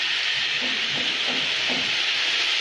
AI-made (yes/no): no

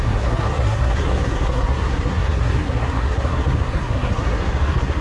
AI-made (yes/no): yes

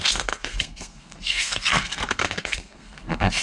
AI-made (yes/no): yes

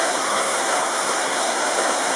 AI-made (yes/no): yes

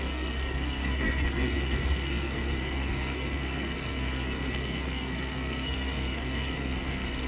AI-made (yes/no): yes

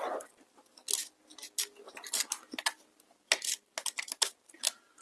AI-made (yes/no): no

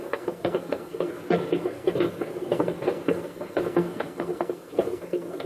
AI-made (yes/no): yes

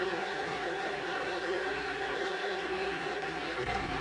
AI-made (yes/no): yes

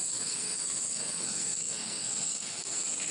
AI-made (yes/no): yes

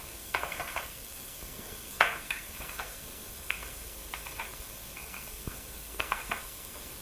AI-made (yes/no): yes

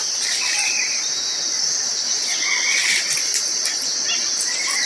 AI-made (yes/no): no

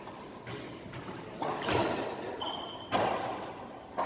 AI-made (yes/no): no